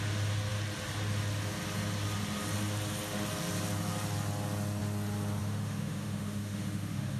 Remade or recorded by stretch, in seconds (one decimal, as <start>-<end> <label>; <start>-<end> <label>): 0.0-5.4 recorded; 5.4-7.2 remade